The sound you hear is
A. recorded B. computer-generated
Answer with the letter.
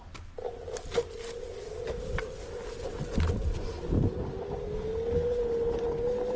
A